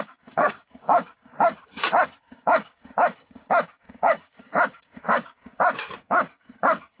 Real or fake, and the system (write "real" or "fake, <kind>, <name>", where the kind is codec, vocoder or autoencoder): fake, codec, DAC